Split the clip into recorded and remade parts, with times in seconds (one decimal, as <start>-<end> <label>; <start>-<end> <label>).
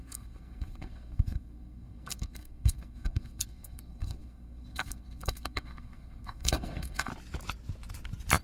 0.0-7.1 remade; 7.1-8.4 recorded